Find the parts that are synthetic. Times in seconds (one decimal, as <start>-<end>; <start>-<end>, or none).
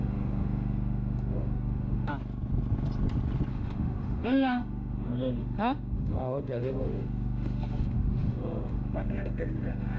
0.0-2.1; 3.5-10.0